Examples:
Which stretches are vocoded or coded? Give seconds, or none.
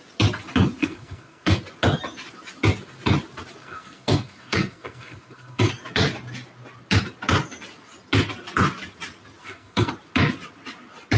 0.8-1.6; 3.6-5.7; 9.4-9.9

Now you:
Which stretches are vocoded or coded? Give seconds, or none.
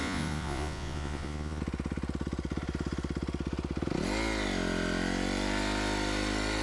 0.0-1.6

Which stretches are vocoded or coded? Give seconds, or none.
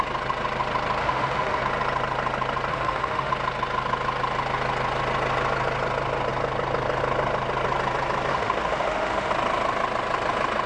1.0-1.6; 2.7-3.3; 8.3-9.3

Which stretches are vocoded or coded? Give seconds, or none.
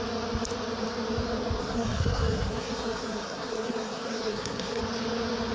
1.6-4.8